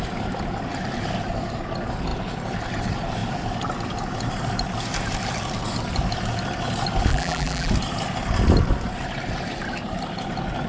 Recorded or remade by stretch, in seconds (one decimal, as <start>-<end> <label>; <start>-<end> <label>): 0.0-7.1 recorded; 7.1-7.7 remade; 7.7-10.7 recorded